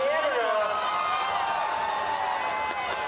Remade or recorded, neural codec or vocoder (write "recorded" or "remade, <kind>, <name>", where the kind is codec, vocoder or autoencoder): recorded